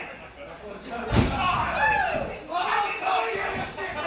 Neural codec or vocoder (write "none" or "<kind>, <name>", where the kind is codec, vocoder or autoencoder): none